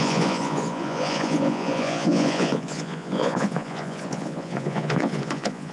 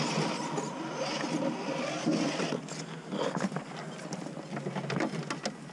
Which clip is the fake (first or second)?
first